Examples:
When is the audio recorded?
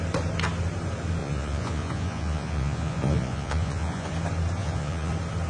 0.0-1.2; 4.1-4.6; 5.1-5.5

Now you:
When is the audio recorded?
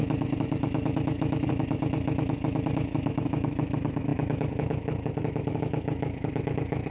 none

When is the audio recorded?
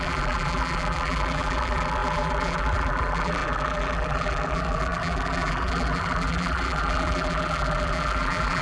none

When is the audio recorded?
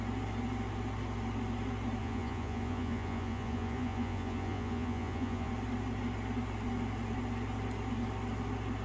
0.0-2.0; 5.5-8.8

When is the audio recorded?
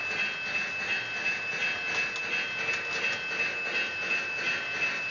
0.0-5.1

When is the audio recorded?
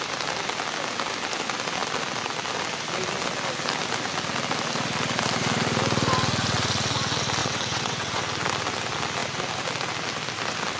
0.0-7.4; 8.2-10.8